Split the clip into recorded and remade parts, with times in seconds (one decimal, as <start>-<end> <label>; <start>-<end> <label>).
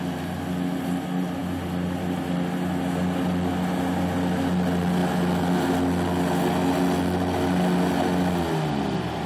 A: 0.0-9.3 recorded